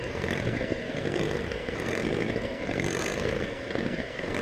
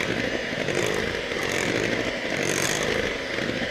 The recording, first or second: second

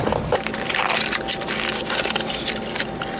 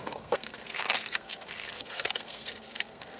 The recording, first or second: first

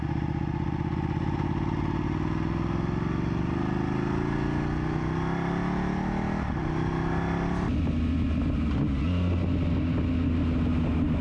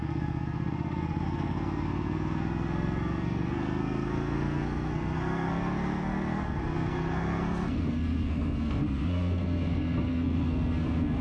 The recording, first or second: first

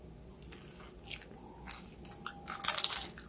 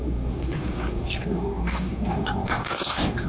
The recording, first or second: first